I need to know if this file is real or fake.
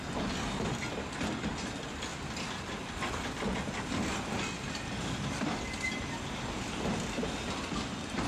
real